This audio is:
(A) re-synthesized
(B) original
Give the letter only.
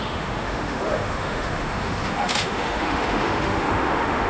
A